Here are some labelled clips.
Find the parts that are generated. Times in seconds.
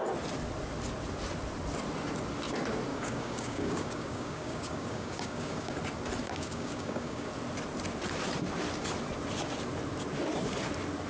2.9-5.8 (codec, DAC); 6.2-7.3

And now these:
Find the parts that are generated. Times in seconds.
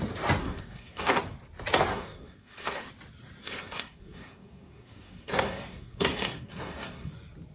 0.4-1.2 (codec, SNAC); 1.9-2.9; 3.4-7.1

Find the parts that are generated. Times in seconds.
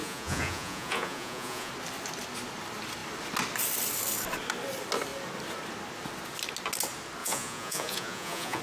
0.0-1.7 (vocoder, Vocos); 7.2-8.6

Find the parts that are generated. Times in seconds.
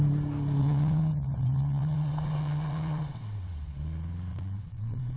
0.6-3.7 (vocoder, WaveNeXt); 4.3-5.2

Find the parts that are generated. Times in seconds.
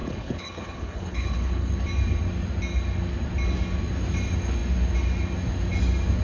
0.0-1.7 (codec, HILCodec)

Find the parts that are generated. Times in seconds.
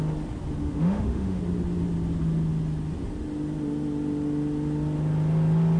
0.6-1.4 (autoencoder, DAC-VAE)